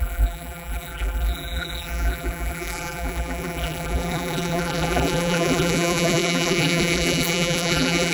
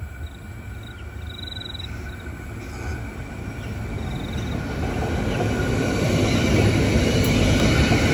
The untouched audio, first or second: second